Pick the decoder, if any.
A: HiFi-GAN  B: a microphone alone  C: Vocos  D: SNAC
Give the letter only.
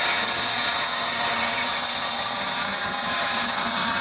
A